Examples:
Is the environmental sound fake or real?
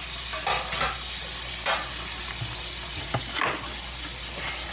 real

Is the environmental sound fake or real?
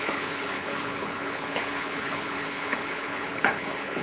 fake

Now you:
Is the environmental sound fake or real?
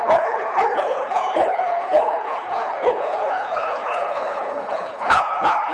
fake